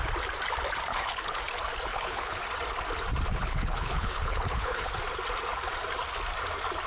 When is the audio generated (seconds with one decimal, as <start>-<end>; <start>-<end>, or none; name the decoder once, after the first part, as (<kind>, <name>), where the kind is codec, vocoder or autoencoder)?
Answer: 0.9-1.4 (codec, HILCodec); 1.9-2.4; 3.3-4.9